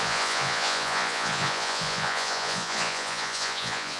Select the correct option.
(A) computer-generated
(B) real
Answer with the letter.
A